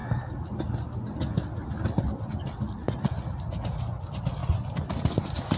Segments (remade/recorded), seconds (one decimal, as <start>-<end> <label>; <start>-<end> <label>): 0.0-5.6 recorded